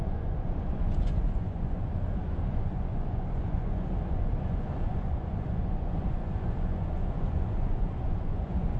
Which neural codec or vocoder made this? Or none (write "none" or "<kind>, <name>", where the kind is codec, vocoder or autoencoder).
vocoder, Vocos